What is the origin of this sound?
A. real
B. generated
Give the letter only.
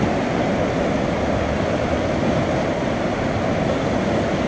B